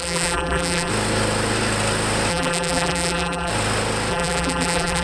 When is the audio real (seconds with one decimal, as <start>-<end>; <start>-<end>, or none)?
0.9-2.3; 3.5-4.1